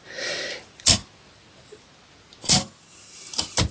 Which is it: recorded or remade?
recorded